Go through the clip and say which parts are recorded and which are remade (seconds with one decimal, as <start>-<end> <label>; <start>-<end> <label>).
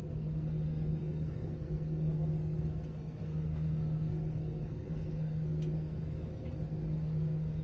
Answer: 0.0-7.6 remade